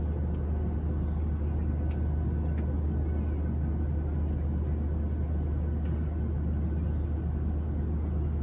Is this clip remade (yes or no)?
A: no